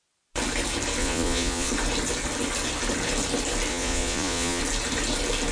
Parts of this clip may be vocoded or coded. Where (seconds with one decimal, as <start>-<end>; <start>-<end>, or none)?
1.0-1.7; 3.7-4.6